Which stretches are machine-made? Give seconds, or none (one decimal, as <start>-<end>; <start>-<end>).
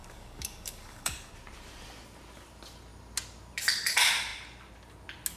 0.0-1.3